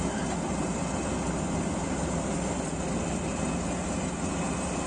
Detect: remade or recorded recorded